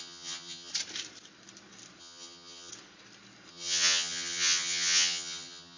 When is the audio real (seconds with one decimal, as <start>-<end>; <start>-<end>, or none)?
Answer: 0.7-2.0; 2.7-3.5